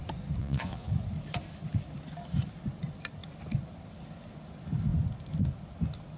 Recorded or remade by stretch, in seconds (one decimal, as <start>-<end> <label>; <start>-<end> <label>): 0.0-0.4 recorded; 0.4-0.9 remade; 0.9-6.2 recorded